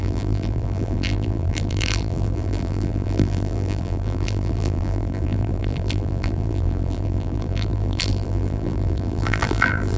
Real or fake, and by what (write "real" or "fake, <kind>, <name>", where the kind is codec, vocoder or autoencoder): fake, vocoder, BigVGAN v2